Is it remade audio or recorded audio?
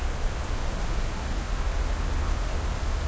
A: recorded